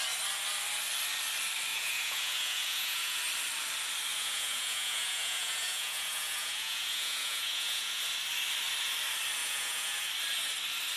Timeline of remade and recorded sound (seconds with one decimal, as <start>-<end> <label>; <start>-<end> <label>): 0.0-1.7 recorded; 1.7-3.2 remade; 3.2-4.1 recorded; 4.1-8.0 remade; 8.0-9.4 recorded; 9.4-10.1 remade; 10.1-11.0 recorded